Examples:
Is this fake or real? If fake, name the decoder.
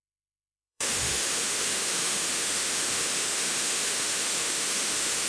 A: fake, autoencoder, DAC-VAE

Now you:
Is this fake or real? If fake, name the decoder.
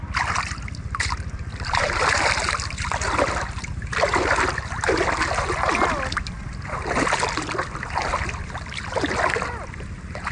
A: real